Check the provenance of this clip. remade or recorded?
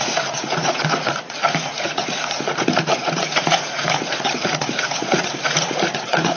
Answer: remade